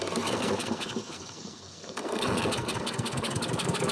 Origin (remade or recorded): remade